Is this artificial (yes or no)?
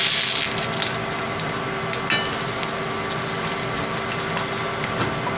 no